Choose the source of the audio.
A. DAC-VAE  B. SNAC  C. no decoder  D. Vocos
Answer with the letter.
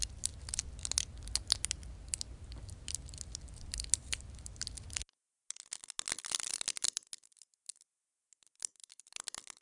C